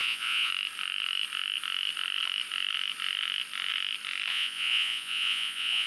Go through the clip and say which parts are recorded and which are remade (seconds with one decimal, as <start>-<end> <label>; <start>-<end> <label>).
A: 0.0-0.5 remade; 0.5-4.3 recorded; 4.3-5.9 remade